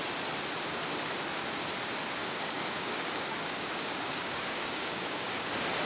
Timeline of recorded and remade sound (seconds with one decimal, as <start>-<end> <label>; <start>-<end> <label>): 0.0-2.2 recorded; 2.2-5.5 remade; 5.5-5.9 recorded